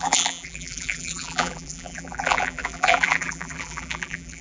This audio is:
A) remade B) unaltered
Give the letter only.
A